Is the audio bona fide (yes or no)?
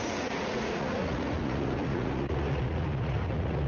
no